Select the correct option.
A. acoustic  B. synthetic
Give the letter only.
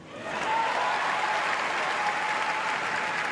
A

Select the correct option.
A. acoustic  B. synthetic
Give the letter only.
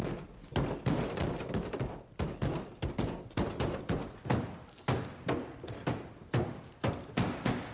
A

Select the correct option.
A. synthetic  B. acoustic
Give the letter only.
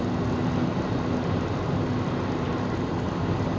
B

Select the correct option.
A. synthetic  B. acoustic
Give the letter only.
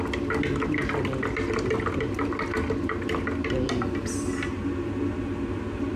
B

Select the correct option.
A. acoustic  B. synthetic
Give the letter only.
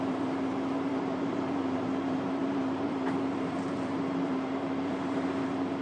B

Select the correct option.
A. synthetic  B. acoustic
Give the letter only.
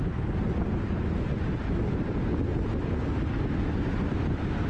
B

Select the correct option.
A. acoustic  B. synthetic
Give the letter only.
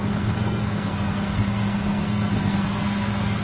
B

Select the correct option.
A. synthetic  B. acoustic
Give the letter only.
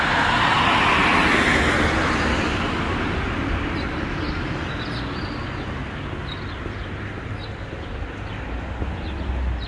B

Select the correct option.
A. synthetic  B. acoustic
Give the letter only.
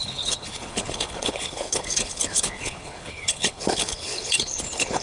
A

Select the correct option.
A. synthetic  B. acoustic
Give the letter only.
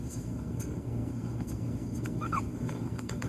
A